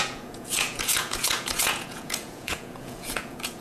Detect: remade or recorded remade